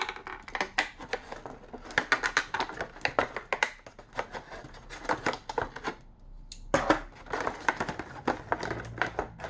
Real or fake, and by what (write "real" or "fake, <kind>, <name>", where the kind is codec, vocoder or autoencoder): real